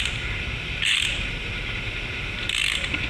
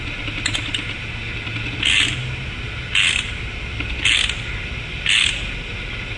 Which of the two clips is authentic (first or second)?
second